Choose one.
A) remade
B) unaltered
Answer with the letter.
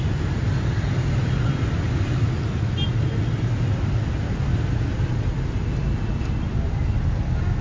B